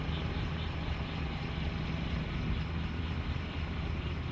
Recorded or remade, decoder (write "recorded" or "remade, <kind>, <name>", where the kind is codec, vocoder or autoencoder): recorded